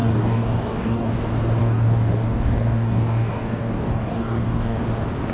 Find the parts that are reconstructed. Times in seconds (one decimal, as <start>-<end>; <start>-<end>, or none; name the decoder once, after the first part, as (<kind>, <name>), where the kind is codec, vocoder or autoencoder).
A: 0.0-1.2 (codec, DAC); 1.6-4.8